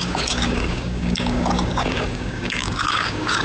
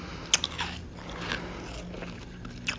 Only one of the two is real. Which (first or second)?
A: second